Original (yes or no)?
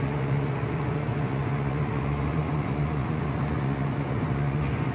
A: no